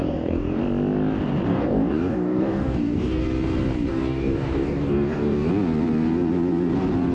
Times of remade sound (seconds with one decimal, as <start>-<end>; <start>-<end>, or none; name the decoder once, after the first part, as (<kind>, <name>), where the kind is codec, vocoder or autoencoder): 0.0-0.6 (codec, DAC); 1.5-3.2; 3.9-5.5